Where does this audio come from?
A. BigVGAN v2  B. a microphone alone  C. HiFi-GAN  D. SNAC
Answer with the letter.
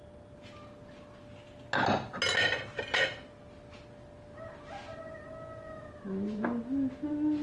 B